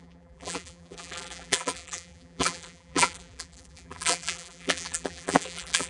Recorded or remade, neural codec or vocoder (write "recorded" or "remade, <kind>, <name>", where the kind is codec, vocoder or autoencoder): remade, vocoder, BigVGAN v2